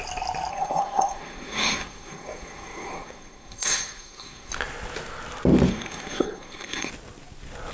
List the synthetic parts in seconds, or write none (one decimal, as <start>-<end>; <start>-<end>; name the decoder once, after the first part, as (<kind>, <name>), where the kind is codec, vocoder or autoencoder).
0.5-4.5 (codec, SNAC); 5.7-6.9